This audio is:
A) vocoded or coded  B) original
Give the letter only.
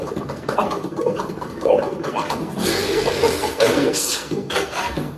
A